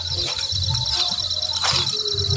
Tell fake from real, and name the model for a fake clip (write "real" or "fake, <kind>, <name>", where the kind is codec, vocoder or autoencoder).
real